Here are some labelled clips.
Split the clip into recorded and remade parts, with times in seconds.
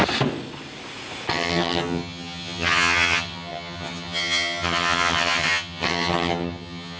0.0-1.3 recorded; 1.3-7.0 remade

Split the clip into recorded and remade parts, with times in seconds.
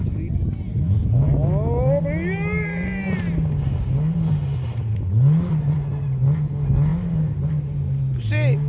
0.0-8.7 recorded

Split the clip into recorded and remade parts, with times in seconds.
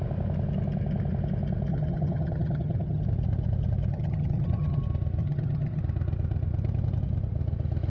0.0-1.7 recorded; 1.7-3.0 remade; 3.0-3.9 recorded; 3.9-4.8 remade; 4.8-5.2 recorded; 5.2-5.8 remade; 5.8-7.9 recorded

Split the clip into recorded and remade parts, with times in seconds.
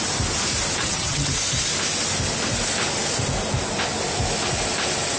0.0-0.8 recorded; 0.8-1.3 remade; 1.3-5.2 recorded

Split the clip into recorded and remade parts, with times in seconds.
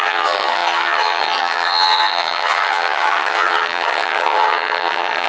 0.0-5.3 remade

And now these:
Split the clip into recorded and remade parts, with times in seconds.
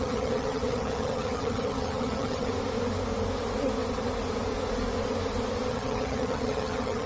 0.0-2.5 remade; 2.5-5.7 recorded; 5.7-7.1 remade